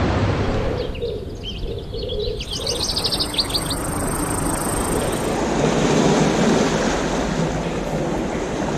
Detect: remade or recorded recorded